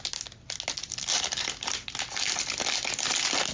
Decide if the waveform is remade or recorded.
recorded